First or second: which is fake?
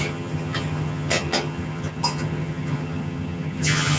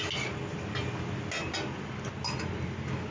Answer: first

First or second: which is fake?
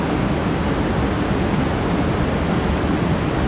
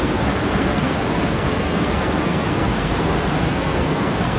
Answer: second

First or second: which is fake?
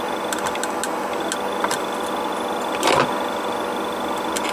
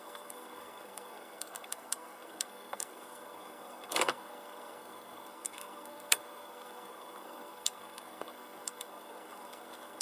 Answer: second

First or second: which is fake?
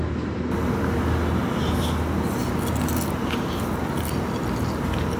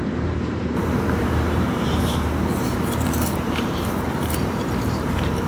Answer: second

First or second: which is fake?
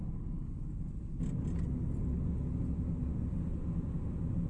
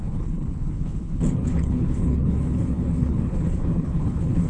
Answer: second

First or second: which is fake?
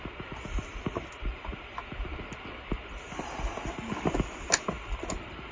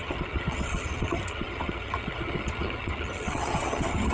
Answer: second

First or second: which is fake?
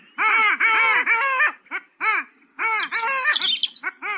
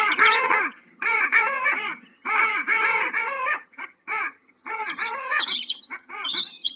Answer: second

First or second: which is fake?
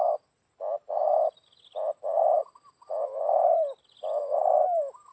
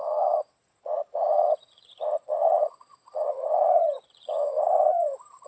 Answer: second